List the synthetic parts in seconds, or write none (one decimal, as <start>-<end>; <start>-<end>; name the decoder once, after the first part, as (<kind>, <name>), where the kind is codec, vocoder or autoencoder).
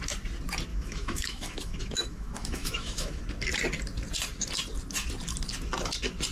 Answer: 0.7-3.2 (autoencoder, DAC-VAE)